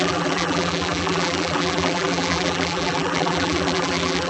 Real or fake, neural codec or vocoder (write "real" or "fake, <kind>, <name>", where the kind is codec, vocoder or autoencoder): fake, vocoder, BigVGAN v2